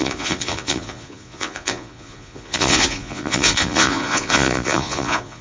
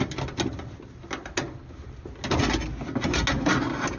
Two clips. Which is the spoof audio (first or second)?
first